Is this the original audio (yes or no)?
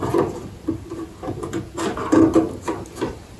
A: yes